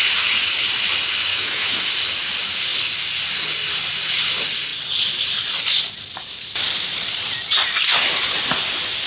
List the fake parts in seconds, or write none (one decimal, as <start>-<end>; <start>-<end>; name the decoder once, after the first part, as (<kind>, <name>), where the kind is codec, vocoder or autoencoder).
1.3-1.8 (autoencoder, DAC-VAE)